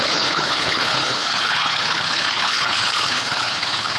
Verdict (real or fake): fake